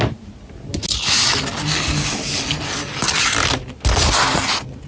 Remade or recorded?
recorded